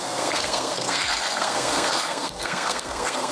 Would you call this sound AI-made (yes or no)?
yes